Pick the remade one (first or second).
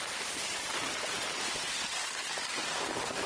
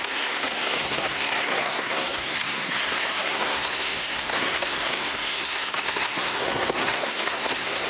second